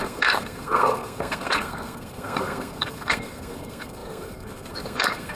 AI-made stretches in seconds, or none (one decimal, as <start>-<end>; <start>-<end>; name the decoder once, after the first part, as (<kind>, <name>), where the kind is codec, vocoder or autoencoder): 0.0-5.4 (codec, SNAC)